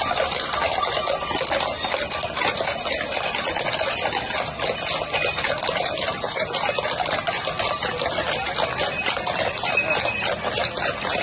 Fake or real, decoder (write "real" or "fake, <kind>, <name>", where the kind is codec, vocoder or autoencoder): real